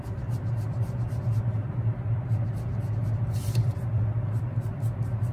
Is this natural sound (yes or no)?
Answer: no